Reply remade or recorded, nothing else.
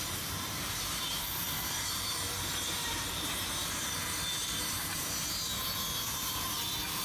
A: remade